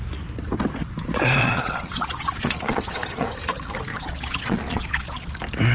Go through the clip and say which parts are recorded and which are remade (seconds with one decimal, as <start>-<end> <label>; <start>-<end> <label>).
0.0-1.4 recorded; 1.4-3.3 remade; 3.3-3.9 recorded; 3.9-5.3 remade; 5.3-5.7 recorded